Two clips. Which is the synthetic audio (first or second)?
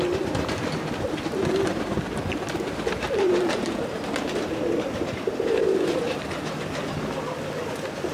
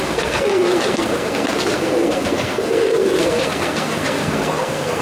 second